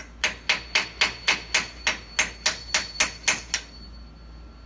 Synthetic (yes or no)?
no